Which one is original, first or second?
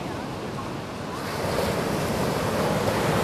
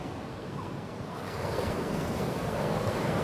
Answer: first